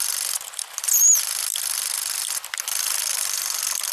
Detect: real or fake real